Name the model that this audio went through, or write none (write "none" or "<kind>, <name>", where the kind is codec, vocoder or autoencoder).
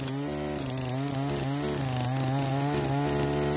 none